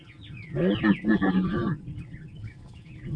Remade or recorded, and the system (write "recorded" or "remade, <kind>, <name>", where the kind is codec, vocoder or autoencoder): recorded